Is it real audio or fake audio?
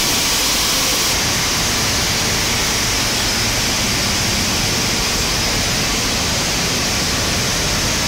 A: real